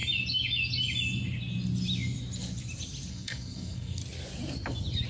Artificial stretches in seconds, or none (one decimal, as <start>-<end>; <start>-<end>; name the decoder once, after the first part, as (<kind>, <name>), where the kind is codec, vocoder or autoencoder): 3.1-4.0 (codec, SNAC)